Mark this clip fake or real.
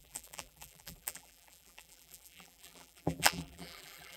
fake